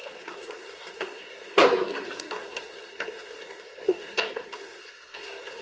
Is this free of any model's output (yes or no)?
no